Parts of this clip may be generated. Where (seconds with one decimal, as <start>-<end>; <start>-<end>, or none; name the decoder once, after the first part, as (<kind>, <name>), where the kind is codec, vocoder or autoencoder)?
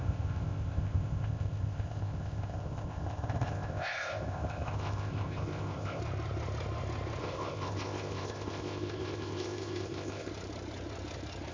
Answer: 0.0-6.0 (codec, ZipCodec); 7.2-10.3